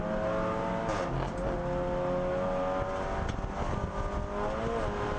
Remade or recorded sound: recorded